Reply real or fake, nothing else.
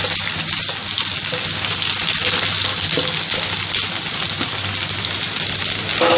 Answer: real